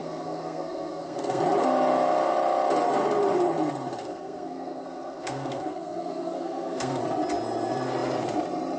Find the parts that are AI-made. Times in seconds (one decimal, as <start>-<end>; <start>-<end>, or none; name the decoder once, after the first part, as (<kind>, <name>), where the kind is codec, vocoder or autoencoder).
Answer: 0.0-1.4 (codec, SNAC); 4.0-7.0